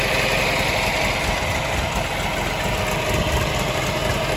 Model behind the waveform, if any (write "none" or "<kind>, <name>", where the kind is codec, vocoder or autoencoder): none